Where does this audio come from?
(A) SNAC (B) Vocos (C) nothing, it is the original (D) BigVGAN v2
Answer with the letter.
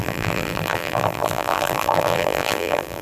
D